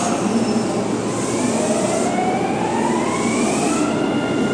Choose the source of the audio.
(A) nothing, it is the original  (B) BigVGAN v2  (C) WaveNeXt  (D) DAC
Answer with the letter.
A